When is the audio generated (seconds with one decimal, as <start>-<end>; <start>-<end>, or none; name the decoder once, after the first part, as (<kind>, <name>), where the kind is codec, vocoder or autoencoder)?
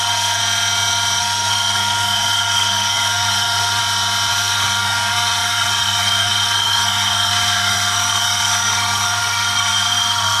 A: 0.0-0.4 (codec, SNAC); 1.2-3.8; 4.3-10.4